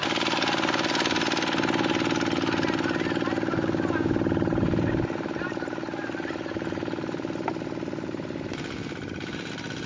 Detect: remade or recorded recorded